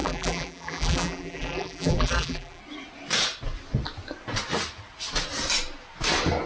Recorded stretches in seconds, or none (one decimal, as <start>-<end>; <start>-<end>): 2.6-6.5